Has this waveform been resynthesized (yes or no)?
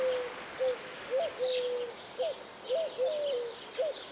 no